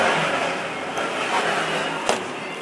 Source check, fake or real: real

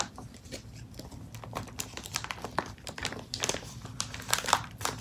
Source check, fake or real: fake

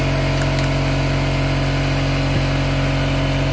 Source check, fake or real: real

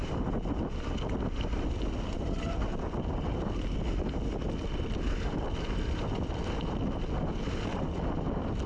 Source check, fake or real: real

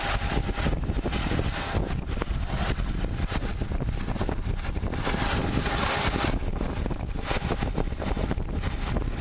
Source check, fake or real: real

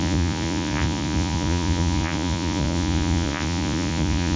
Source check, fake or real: fake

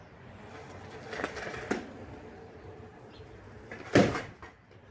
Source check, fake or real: real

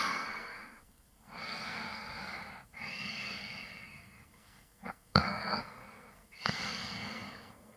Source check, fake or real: fake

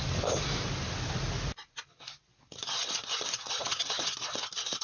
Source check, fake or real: real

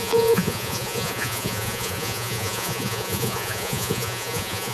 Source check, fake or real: fake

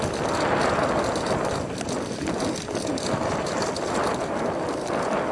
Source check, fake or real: real